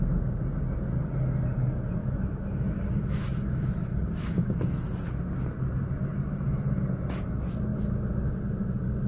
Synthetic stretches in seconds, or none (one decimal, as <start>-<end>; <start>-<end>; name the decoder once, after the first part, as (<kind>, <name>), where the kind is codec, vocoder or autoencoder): 2.0-4.8 (autoencoder, DAC-VAE)